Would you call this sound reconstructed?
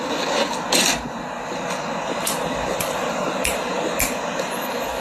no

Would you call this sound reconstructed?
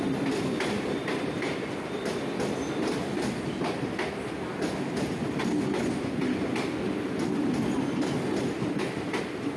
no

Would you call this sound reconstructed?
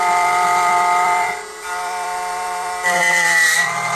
yes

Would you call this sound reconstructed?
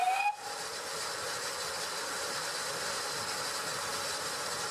no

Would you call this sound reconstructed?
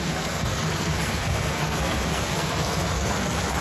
yes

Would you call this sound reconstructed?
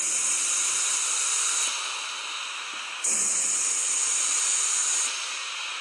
no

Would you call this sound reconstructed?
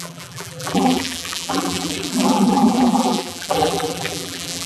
yes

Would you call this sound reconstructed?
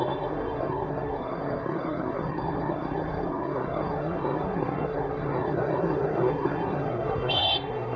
yes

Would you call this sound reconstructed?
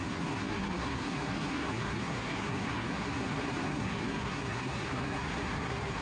yes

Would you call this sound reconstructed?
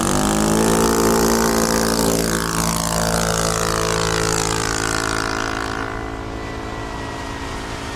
no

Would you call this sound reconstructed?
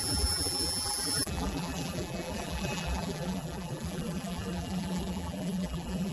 yes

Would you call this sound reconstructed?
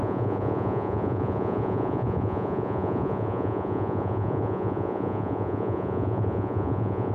yes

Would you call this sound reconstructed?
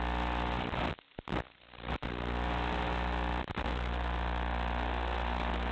no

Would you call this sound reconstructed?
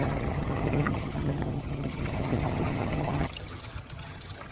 yes